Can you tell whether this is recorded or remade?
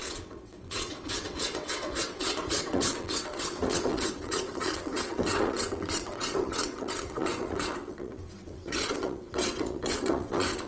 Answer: remade